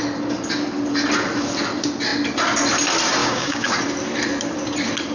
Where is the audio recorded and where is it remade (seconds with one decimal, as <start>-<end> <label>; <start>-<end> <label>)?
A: 0.0-3.2 recorded; 3.2-3.7 remade; 3.7-5.1 recorded